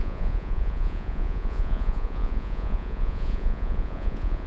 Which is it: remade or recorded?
remade